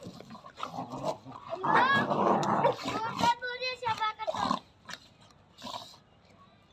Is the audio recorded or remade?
recorded